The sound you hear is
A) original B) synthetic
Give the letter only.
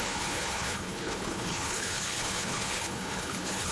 B